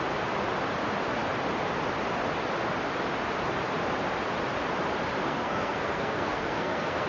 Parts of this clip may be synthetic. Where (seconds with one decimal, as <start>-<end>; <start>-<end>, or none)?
5.2-7.1